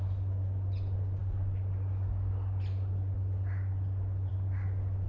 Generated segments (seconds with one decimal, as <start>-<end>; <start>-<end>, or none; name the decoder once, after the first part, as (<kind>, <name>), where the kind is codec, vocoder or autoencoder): none